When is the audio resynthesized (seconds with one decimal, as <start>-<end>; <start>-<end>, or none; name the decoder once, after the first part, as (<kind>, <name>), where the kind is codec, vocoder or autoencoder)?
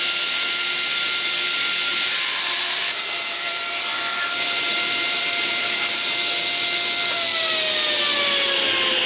1.9-6.0 (vocoder, BigVGAN v2)